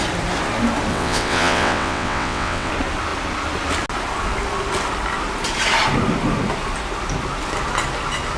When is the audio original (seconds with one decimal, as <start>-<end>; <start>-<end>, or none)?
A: 0.0-0.9; 2.7-8.4